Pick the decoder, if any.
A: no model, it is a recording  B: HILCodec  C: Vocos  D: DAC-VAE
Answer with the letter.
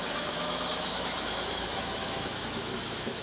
D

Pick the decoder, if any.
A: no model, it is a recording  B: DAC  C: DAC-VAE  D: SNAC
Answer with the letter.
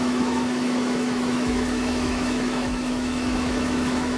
C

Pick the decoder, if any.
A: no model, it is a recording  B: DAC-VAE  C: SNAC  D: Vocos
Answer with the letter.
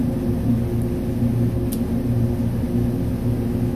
A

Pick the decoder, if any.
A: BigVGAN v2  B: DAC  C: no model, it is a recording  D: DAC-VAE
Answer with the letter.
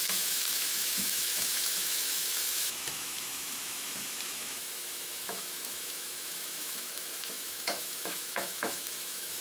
D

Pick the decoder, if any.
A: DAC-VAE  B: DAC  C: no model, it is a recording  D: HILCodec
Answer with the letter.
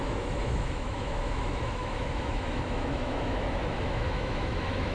A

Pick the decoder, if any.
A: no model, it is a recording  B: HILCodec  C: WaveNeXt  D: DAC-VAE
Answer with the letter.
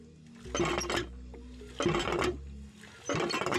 A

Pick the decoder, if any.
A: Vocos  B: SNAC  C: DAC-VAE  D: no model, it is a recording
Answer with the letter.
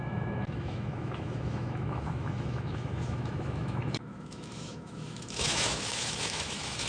C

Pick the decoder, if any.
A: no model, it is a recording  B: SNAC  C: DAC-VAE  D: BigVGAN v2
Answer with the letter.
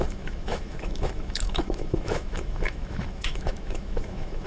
C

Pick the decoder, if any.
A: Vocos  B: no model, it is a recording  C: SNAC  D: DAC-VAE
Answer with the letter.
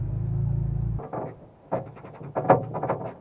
B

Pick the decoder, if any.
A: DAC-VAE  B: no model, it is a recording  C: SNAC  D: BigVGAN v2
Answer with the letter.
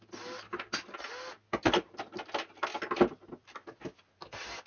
B